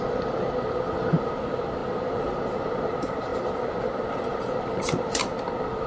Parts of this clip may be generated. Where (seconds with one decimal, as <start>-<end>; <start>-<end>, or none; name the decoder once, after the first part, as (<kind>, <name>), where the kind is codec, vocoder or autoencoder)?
none